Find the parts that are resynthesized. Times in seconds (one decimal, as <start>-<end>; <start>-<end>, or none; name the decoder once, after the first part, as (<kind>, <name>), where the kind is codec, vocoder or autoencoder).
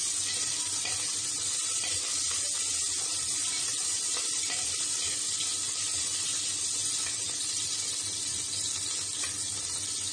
1.1-2.2 (vocoder, BigVGAN v2); 3.7-7.7